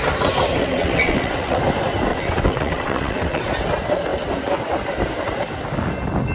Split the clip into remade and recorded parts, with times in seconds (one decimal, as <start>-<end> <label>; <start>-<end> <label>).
0.0-0.6 recorded; 0.6-1.6 remade; 1.6-2.1 recorded; 2.1-3.5 remade; 3.5-6.3 recorded